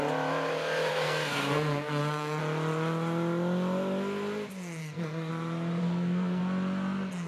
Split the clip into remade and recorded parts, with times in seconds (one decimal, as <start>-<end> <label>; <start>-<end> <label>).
0.0-0.9 recorded; 0.9-2.4 remade; 2.4-4.8 recorded; 4.8-5.3 remade; 5.3-5.8 recorded; 5.8-6.4 remade; 6.4-7.3 recorded